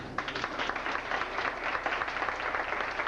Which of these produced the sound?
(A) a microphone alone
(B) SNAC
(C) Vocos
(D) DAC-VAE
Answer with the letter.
A